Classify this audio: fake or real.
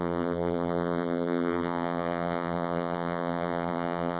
fake